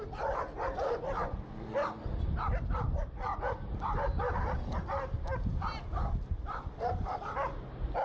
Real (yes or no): yes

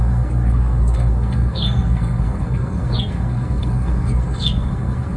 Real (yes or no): no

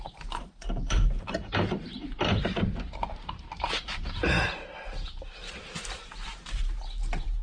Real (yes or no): no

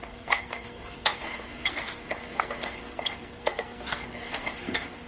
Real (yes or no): no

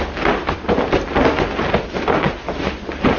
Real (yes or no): yes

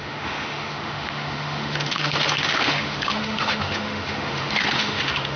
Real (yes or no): no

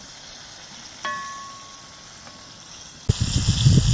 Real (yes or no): yes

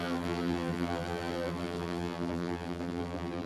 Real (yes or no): no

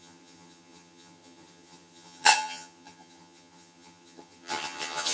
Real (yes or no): no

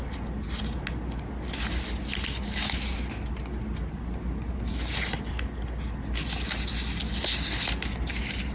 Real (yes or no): yes